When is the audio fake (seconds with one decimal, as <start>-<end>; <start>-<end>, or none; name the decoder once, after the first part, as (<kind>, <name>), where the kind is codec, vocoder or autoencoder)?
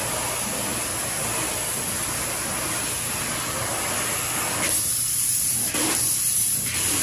none